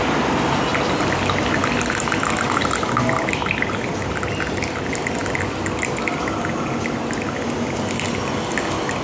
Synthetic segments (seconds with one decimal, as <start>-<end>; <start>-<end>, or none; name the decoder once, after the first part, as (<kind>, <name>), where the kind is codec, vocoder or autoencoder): none